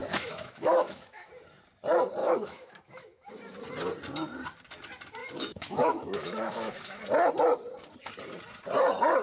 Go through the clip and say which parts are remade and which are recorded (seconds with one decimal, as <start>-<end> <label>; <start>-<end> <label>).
0.0-1.3 remade; 1.3-2.2 recorded; 2.2-3.3 remade; 3.3-5.2 recorded; 5.2-7.0 remade; 7.0-9.2 recorded